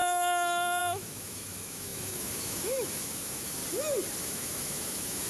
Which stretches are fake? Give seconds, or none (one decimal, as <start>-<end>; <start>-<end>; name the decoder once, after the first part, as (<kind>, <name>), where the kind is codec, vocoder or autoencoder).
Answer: 0.0-3.6 (autoencoder, DAC-VAE); 4.2-5.3